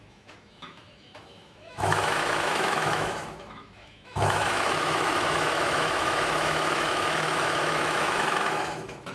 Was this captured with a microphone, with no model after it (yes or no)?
no